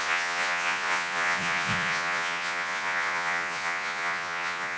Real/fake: fake